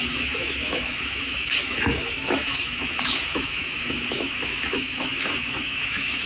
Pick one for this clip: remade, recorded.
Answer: remade